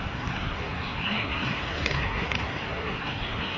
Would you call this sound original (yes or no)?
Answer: no